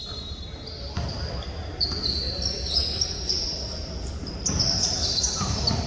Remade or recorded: recorded